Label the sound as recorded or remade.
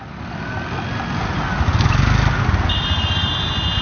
recorded